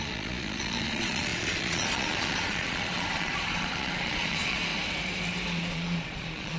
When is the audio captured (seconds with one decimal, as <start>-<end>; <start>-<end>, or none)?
4.7-5.7